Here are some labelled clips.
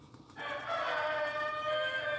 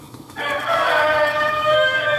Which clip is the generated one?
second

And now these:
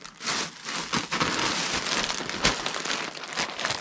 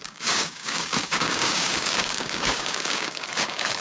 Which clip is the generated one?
second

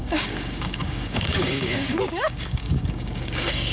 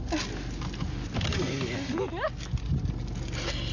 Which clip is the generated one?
first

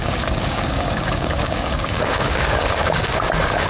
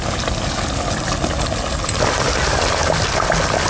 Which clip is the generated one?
first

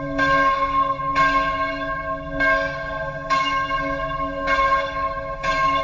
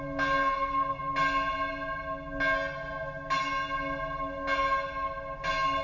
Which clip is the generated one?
first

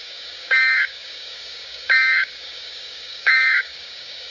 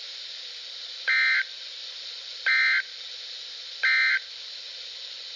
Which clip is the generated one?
first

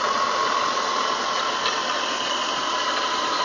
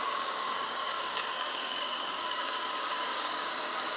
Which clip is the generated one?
second